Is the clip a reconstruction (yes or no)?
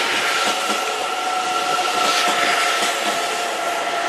no